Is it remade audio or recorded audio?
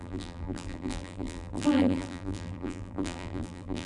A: remade